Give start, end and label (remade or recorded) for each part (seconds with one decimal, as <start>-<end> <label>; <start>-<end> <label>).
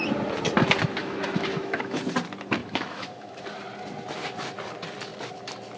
0.0-1.0 recorded; 1.0-2.0 remade; 2.0-2.6 recorded; 2.6-3.4 remade; 3.4-5.8 recorded